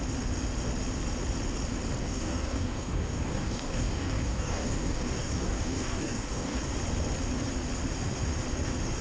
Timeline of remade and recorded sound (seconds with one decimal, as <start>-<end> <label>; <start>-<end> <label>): 0.0-2.0 recorded; 2.0-6.6 remade; 6.6-9.0 recorded